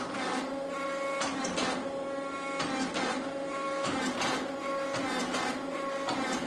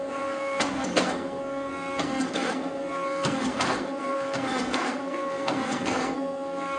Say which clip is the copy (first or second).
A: second